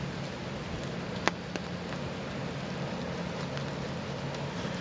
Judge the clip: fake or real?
real